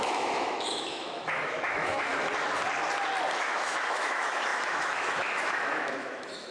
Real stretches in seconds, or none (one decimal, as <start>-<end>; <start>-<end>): 2.1-3.4